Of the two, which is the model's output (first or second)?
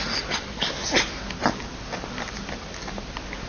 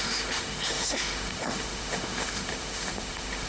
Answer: second